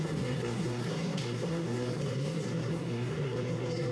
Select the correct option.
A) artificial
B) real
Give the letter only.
A